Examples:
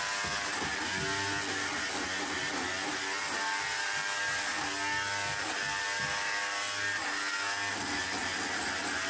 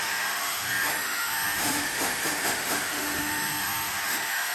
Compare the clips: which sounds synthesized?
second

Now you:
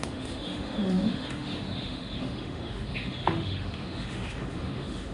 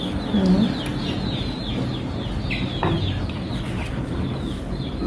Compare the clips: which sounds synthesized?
first